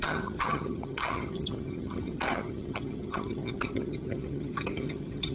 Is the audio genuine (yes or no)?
no